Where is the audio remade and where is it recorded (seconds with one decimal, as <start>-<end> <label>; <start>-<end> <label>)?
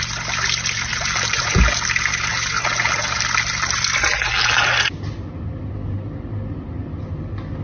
0.0-0.9 recorded; 0.9-1.6 remade; 1.6-2.3 recorded; 2.3-3.2 remade; 3.2-4.1 recorded; 4.1-4.7 remade; 4.7-7.6 recorded